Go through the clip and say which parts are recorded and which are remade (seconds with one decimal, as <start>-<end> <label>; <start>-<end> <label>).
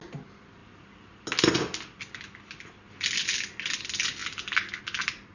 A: 0.0-5.3 recorded